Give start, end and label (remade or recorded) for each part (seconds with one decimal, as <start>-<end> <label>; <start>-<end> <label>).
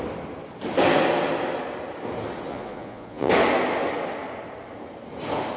0.0-2.5 recorded; 2.5-3.3 remade; 3.3-5.6 recorded